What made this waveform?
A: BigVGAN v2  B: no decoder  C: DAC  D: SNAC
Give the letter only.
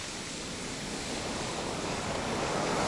C